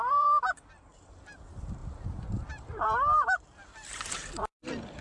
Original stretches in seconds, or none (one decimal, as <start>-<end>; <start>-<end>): none